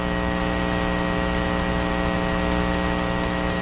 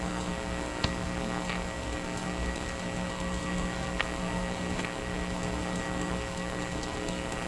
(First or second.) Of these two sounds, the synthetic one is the second